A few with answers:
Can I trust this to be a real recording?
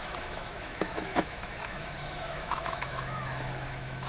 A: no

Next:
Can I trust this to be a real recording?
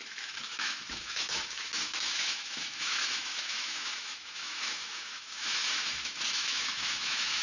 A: no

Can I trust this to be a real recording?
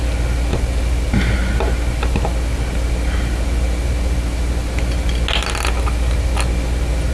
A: yes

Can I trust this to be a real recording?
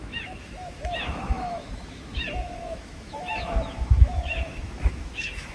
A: no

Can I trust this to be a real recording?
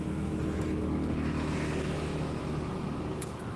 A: no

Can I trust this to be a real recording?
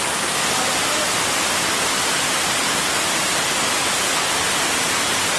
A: yes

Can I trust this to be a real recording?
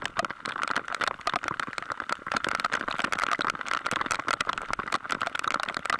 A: yes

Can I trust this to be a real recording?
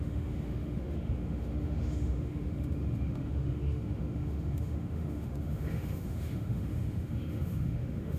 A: no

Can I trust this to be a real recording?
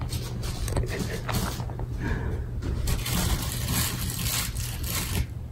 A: yes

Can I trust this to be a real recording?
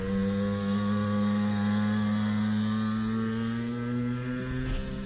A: yes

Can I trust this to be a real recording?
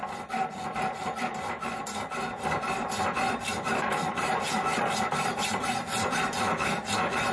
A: yes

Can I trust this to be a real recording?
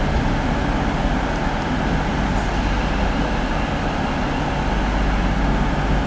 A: yes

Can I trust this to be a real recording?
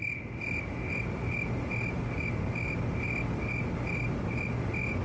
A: yes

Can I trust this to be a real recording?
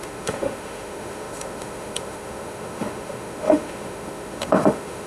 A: no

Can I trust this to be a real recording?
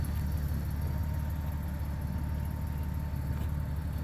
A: yes